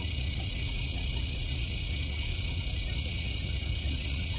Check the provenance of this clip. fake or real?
fake